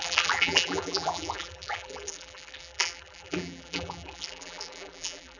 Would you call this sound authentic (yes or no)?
no